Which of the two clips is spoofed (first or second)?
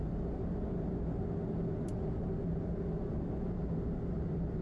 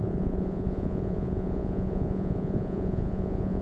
second